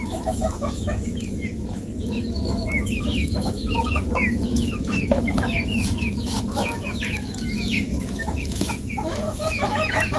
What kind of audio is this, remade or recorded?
remade